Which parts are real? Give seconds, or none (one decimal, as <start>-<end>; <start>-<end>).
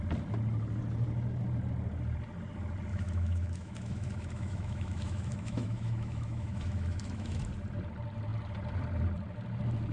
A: 0.0-2.9; 7.5-9.9